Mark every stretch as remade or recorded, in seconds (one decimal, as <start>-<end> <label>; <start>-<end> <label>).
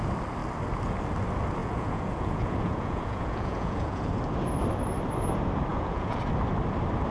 0.0-1.6 recorded; 1.6-4.1 remade; 4.1-5.7 recorded; 5.7-6.2 remade; 6.2-7.1 recorded